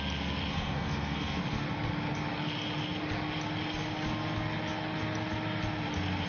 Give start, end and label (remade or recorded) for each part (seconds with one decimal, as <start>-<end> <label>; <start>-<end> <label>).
0.0-0.5 recorded; 0.5-1.4 remade; 1.4-6.3 recorded